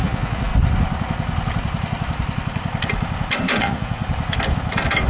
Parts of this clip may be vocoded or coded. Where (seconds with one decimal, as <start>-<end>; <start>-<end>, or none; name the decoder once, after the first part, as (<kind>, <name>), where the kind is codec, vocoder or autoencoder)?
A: 0.0-0.5 (vocoder, Vocos); 3.6-4.0